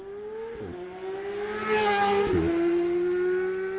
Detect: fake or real real